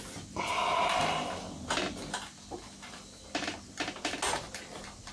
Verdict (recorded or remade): recorded